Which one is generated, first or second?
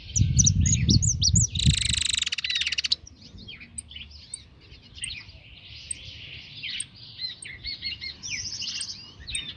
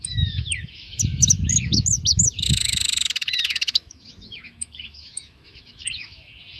second